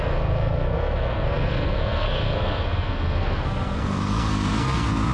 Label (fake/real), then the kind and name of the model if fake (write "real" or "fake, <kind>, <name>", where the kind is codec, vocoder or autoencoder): fake, codec, SNAC